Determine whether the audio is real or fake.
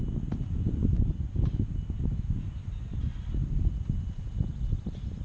real